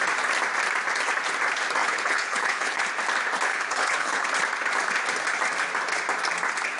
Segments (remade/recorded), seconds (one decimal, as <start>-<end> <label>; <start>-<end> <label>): 0.0-1.8 recorded; 1.8-2.8 remade; 2.8-3.5 recorded; 3.5-4.3 remade; 4.3-6.8 recorded